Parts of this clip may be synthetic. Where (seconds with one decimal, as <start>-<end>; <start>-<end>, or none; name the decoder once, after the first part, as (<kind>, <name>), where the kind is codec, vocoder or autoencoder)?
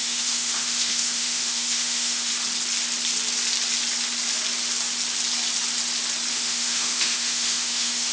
0.0-2.3 (autoencoder, DAC-VAE); 6.3-8.1